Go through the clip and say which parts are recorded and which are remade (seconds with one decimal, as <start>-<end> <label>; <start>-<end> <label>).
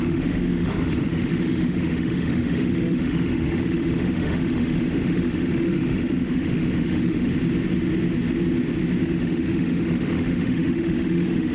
0.0-7.3 remade; 7.3-9.0 recorded; 9.0-11.5 remade